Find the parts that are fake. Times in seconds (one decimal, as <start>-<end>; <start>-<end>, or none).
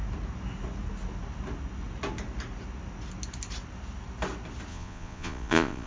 4.7-5.9